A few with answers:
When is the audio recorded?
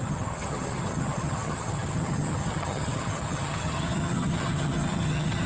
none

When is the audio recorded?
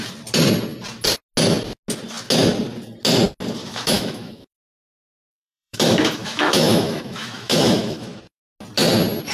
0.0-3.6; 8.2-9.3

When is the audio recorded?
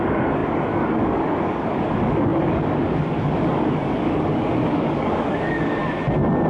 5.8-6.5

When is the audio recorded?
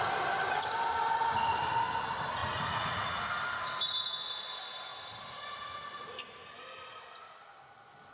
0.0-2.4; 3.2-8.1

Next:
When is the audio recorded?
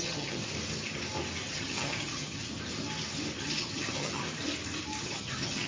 0.4-1.5; 2.5-3.4; 4.2-5.0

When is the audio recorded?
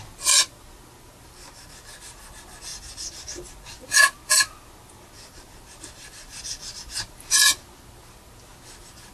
0.0-9.1